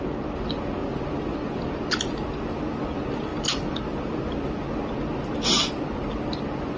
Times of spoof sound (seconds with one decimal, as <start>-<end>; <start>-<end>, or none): none